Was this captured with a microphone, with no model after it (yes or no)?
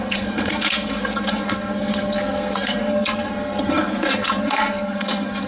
no